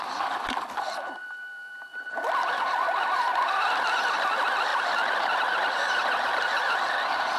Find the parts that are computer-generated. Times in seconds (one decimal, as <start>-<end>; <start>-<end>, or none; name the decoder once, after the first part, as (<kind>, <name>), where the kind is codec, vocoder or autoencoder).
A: 0.0-4.7 (vocoder, BigVGAN v2); 6.9-7.4